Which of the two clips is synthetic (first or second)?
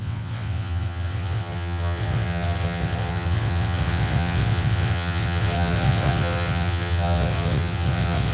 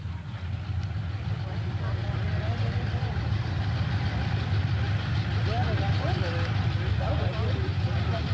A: first